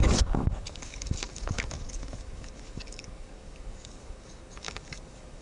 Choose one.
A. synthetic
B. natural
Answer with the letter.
A